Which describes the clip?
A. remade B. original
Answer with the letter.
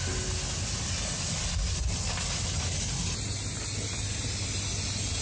B